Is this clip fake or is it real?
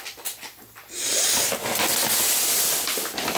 real